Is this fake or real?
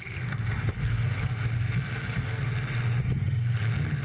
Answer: real